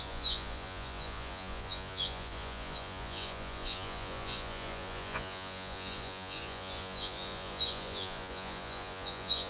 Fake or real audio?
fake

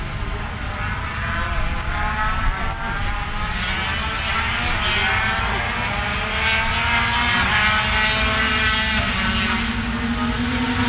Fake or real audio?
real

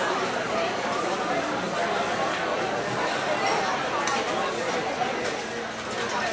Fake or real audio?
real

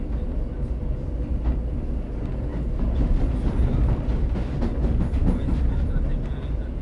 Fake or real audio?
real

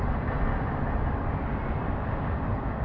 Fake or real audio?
real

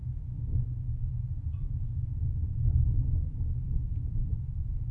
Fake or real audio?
real